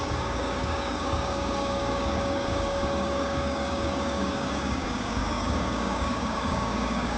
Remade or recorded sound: remade